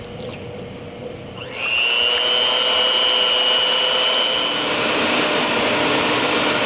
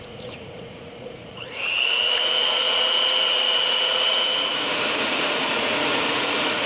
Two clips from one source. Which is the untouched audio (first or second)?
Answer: first